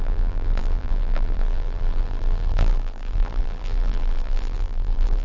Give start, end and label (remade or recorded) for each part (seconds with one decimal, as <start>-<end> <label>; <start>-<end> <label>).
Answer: 0.0-5.2 remade